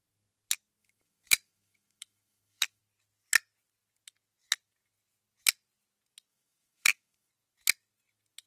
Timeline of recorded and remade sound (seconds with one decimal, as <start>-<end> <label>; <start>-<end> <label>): 0.0-0.8 recorded; 0.8-2.8 remade; 2.8-6.3 recorded; 6.3-7.3 remade; 7.3-8.5 recorded